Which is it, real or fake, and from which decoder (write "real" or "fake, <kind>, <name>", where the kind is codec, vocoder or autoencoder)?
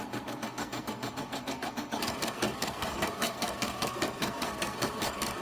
fake, codec, SNAC